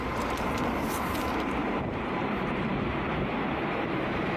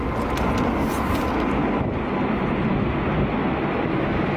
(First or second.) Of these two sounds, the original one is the second